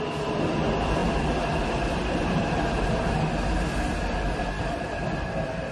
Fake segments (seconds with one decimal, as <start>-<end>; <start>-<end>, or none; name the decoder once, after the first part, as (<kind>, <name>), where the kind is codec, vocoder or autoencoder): none